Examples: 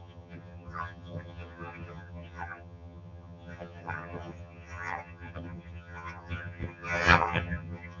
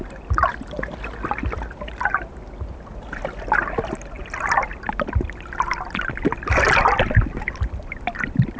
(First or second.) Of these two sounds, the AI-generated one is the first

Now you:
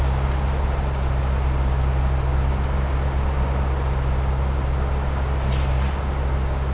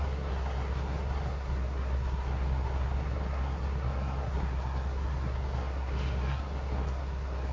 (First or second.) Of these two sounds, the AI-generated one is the second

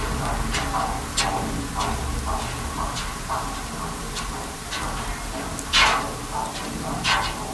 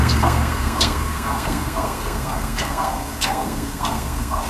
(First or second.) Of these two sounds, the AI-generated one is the second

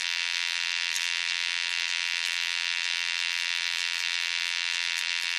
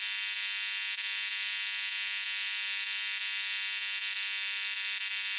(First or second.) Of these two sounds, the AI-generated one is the first